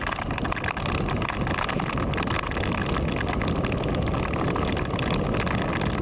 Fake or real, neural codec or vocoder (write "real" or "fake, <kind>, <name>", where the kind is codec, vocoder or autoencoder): real